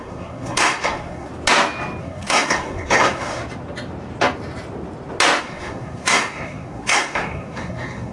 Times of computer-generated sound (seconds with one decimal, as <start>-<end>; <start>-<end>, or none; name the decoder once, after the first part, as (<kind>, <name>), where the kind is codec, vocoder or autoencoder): 0.0-1.3 (codec, SNAC); 2.0-3.4; 5.4-8.1